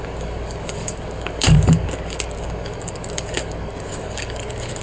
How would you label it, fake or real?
fake